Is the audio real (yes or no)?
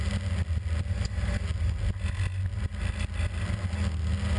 yes